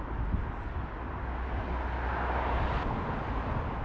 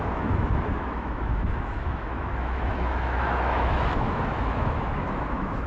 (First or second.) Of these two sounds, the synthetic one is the second